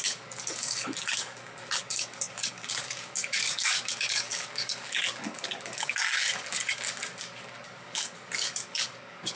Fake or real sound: fake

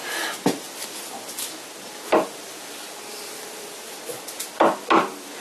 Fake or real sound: real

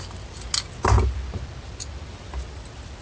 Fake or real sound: real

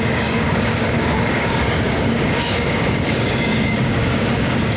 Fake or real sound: fake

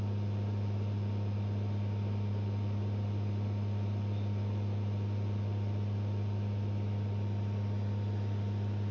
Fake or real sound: real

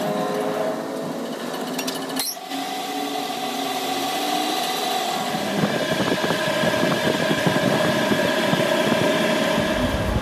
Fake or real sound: real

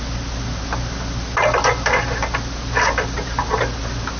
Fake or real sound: real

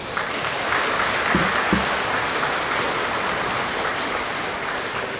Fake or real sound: real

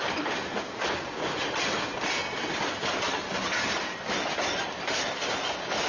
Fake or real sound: real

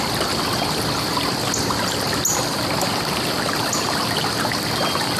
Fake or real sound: real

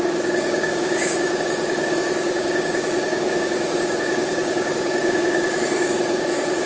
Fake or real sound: fake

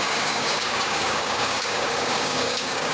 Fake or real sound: fake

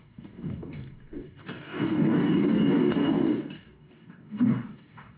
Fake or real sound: fake